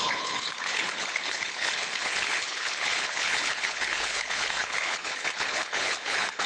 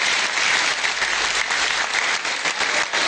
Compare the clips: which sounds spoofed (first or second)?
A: first